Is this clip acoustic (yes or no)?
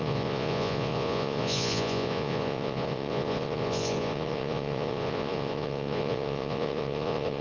no